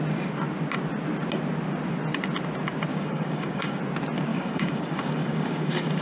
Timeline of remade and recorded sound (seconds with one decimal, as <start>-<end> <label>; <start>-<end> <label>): 0.0-2.9 recorded; 2.9-3.8 remade; 3.8-4.3 recorded; 4.3-6.0 remade